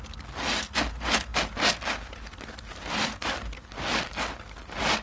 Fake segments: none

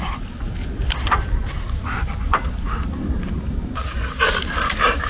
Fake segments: none

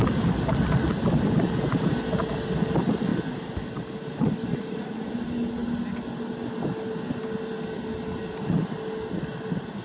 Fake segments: 4.5-5.1 (vocoder, Vocos)

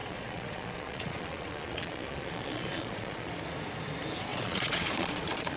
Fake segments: 0.0-3.3 (vocoder, Vocos); 4.3-5.6

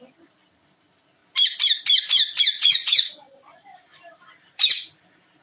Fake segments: 2.5-3.8 (vocoder, Vocos)

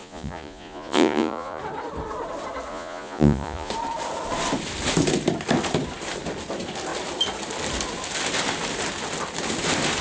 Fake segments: 0.0-1.6 (vocoder, Vocos); 2.7-3.7